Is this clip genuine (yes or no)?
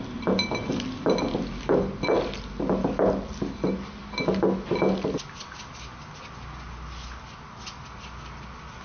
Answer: yes